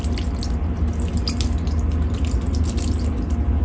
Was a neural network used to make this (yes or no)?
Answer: no